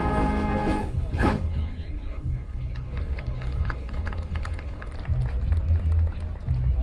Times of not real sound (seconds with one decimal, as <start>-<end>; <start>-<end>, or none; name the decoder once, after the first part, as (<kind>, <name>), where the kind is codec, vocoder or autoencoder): 0.8-4.9 (codec, HILCodec)

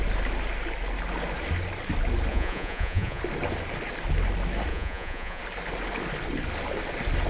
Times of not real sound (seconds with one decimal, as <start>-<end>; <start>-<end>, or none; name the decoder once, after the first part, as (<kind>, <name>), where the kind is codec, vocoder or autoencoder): 2.3-3.2 (vocoder, Vocos); 4.7-5.4